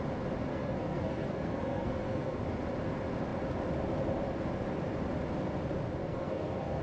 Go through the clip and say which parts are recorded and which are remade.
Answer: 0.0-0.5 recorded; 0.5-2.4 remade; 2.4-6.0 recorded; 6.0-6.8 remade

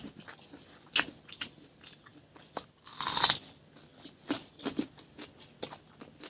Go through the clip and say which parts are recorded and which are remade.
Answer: 0.0-6.3 recorded